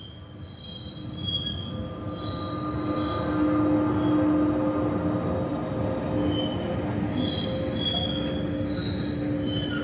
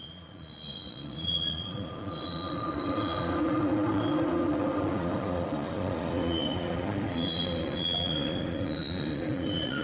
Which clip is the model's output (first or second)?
second